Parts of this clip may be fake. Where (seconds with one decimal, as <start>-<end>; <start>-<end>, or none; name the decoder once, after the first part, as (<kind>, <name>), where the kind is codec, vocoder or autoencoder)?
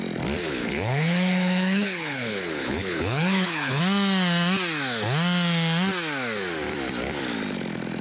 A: 0.4-3.8 (codec, HILCodec)